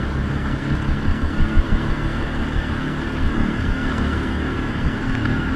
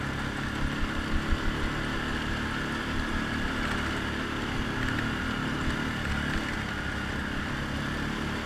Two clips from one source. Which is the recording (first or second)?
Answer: second